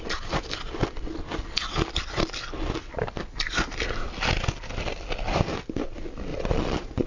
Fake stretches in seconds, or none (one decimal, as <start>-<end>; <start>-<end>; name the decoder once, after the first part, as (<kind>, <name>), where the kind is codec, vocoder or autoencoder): 6.3-7.1 (vocoder, Vocos)